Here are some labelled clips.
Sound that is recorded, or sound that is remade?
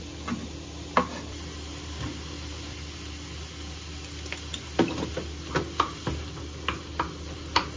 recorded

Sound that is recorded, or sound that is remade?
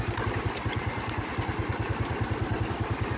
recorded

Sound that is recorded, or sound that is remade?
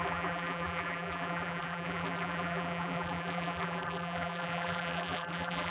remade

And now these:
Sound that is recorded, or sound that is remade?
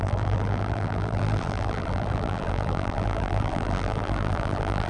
remade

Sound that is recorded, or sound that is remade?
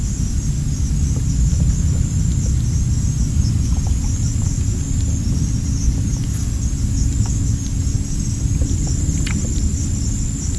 recorded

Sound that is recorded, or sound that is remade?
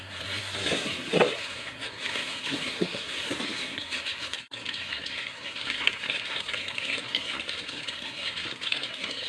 remade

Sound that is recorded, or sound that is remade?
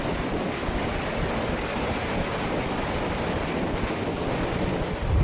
recorded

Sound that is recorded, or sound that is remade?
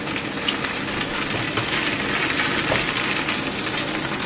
recorded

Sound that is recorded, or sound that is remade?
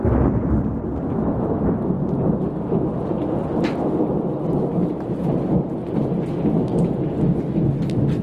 recorded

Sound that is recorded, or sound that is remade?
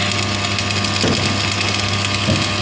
recorded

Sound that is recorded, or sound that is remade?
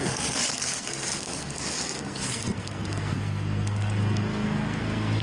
remade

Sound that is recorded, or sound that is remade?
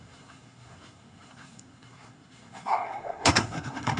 remade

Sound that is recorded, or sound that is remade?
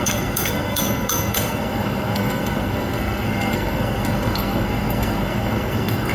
remade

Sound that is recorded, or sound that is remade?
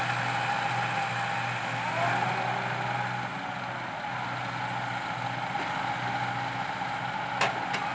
recorded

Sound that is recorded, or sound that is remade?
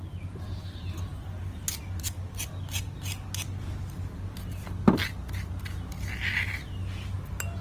recorded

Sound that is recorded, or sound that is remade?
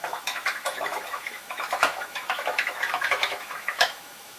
remade